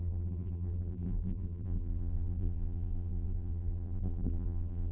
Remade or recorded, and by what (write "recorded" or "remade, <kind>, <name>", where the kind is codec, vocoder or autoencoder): remade, vocoder, BigVGAN v2